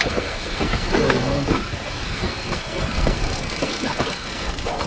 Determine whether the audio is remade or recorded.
remade